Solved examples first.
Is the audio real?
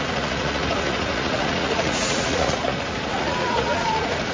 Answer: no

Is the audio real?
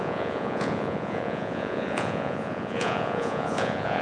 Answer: no